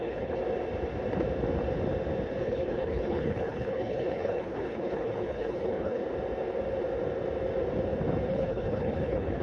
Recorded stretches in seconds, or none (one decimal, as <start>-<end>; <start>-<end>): 0.4-2.4; 6.0-8.3